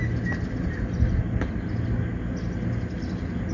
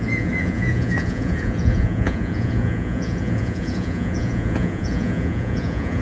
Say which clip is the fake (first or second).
second